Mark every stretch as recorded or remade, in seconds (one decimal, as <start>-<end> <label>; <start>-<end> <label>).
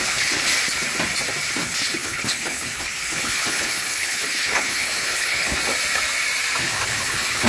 0.0-0.5 remade; 0.5-1.5 recorded; 1.5-5.6 remade; 5.6-6.6 recorded; 6.6-7.5 remade